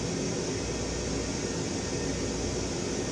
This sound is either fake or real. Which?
real